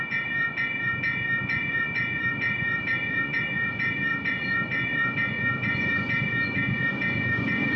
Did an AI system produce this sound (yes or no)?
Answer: yes